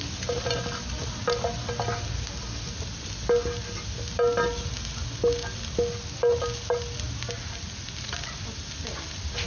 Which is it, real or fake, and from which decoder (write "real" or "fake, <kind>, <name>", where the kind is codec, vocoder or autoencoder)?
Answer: real